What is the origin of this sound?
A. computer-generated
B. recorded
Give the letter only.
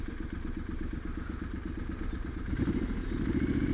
B